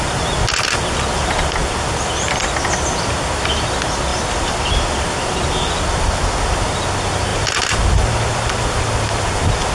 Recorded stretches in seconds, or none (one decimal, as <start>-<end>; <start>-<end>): 0.0-9.7